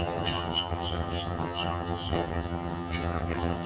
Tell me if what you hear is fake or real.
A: fake